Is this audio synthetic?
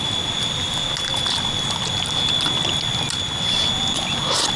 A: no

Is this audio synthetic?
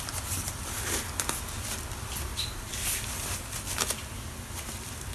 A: no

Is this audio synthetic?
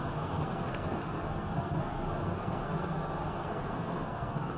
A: yes